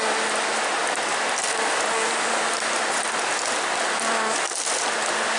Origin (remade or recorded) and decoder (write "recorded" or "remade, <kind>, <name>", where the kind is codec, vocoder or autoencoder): recorded